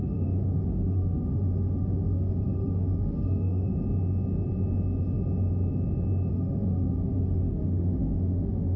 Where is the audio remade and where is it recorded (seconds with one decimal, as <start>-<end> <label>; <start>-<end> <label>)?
0.0-3.7 remade; 3.7-6.3 recorded; 6.3-8.8 remade